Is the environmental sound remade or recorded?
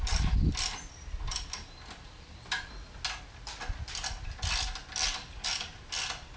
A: recorded